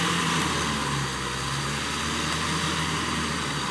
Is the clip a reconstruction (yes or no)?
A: no